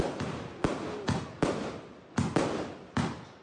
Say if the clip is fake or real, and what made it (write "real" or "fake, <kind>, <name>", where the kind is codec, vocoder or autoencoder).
real